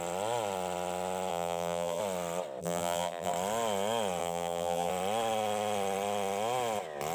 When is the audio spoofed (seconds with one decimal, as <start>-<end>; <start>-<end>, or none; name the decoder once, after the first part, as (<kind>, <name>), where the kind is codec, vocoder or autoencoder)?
1.3-2.0 (vocoder, BigVGAN v2); 2.6-3.3; 4.2-4.9